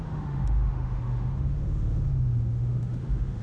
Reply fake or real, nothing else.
fake